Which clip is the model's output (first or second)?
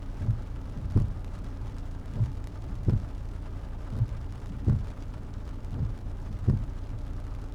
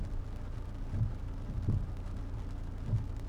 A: first